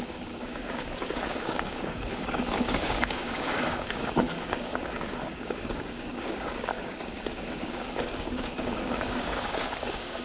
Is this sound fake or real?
fake